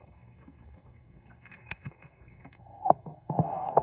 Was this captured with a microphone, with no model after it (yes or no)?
no